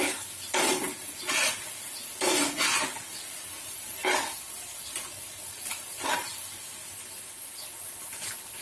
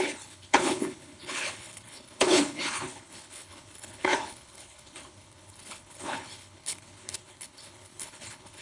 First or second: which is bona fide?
first